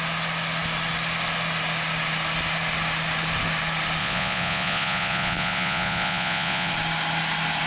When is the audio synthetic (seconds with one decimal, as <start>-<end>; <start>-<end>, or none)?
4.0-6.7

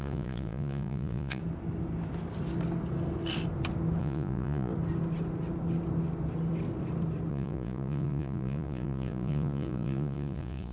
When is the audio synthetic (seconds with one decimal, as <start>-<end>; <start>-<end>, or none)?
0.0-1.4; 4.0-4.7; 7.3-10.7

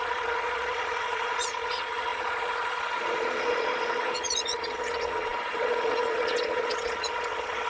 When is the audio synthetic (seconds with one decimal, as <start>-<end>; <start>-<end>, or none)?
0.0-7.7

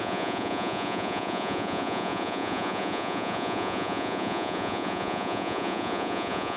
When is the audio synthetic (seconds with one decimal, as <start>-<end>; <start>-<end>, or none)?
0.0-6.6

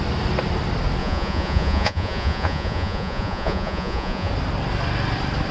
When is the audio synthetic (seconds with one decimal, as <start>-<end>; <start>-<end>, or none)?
1.0-4.3